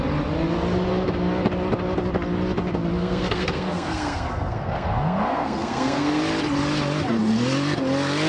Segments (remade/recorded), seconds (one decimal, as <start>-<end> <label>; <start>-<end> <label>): 0.0-3.0 recorded; 3.0-6.2 remade; 6.2-8.3 recorded